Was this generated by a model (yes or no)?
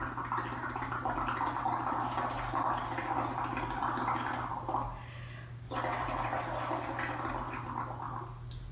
no